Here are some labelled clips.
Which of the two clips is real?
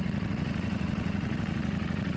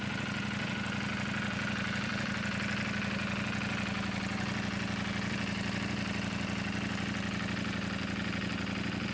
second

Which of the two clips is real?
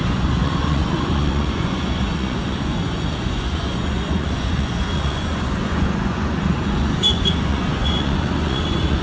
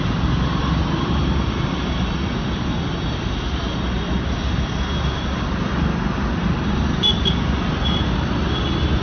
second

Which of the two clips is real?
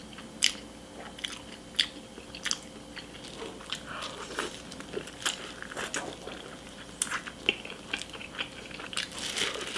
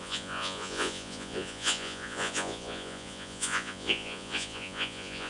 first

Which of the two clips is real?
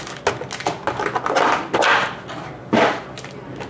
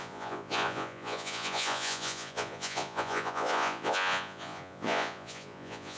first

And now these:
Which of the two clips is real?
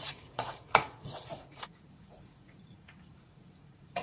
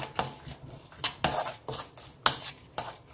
second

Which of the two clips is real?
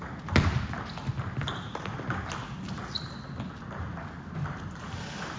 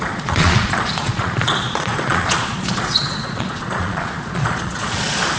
first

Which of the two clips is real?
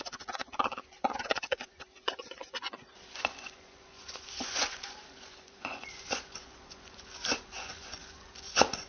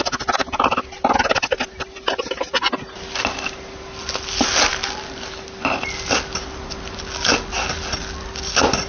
second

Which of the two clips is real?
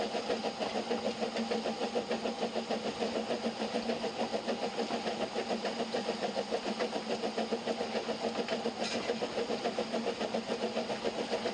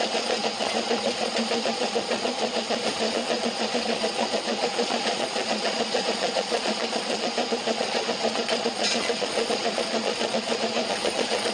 first